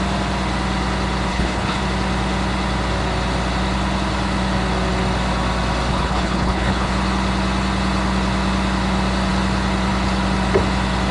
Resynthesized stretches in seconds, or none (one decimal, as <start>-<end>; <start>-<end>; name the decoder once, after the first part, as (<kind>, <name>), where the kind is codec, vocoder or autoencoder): 1.3-1.8 (codec, HILCodec); 5.9-6.9